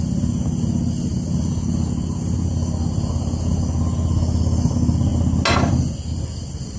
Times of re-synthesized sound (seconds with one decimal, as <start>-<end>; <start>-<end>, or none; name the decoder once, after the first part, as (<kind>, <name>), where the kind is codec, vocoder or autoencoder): none